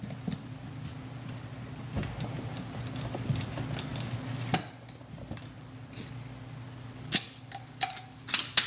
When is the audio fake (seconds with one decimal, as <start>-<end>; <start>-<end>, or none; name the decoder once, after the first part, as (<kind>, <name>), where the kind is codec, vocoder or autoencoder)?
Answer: none